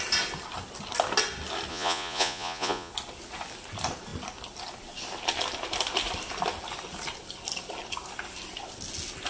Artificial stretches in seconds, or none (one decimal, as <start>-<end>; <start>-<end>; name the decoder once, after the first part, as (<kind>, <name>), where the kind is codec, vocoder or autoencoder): 1.7-2.9 (vocoder, Vocos)